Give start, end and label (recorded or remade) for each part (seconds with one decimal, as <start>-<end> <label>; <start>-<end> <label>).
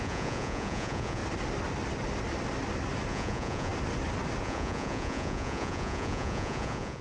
0.0-1.2 remade; 1.2-3.1 recorded; 3.1-3.7 remade; 3.7-4.4 recorded; 4.4-7.0 remade